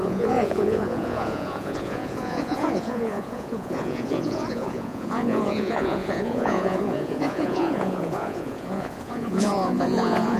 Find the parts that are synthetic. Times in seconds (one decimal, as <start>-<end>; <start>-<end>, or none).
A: 0.0-10.4